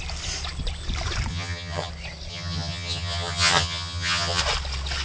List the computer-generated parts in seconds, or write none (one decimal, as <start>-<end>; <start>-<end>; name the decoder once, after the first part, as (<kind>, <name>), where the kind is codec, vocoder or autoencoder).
1.3-1.9 (vocoder, HiFi-GAN); 2.3-4.4